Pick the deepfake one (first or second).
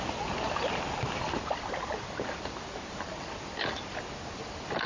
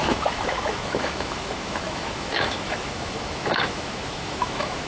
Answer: second